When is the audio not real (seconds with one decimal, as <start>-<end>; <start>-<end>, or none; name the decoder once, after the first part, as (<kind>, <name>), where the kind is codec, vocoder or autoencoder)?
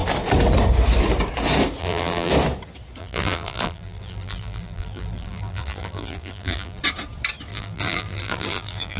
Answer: 1.8-2.3 (vocoder, BigVGAN v2); 3.0-6.8; 7.5-9.0